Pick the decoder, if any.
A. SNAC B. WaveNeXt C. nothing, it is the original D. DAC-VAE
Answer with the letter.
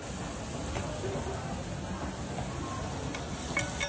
C